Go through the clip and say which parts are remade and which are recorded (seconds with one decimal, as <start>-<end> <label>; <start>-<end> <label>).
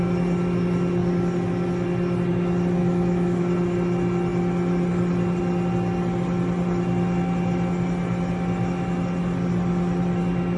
0.0-2.8 recorded; 2.8-3.4 remade; 3.4-10.6 recorded